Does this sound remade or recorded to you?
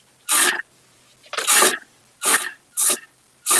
remade